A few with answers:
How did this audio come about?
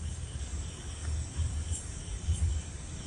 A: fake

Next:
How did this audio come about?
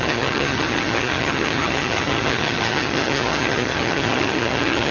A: fake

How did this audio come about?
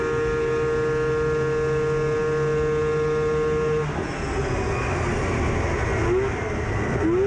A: real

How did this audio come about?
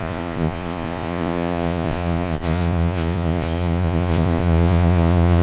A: fake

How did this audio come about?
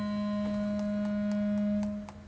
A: real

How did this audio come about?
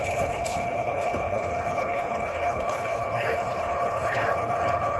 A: fake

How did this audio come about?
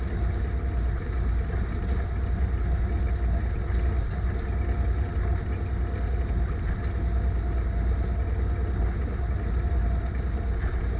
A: real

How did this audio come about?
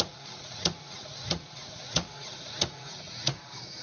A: fake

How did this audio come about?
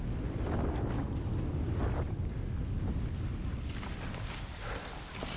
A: real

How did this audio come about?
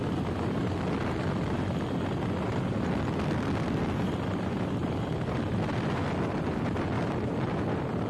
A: real